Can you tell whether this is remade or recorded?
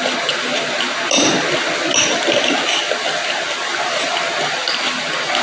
recorded